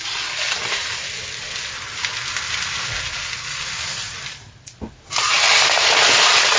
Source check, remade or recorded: recorded